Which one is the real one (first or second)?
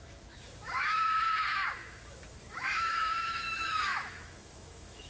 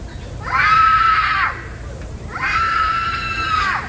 second